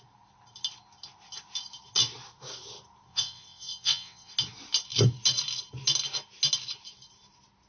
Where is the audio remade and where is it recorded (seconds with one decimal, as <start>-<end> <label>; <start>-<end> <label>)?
0.0-3.1 recorded; 3.1-4.3 remade; 4.3-7.7 recorded